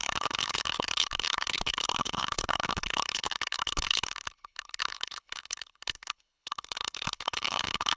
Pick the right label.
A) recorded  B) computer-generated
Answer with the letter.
B